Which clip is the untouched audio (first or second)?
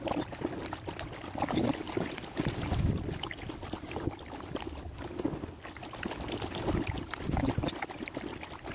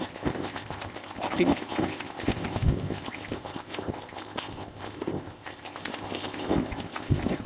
first